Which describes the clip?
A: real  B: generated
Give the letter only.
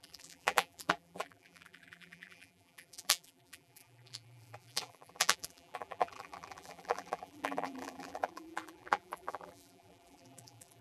B